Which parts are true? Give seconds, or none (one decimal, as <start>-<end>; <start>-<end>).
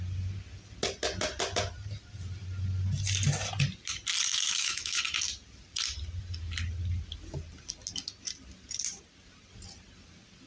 0.0-4.3; 5.0-10.5